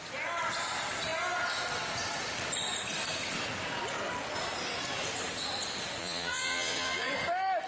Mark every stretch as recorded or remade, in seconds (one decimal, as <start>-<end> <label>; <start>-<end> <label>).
0.0-6.0 recorded; 6.0-7.1 remade; 7.1-7.7 recorded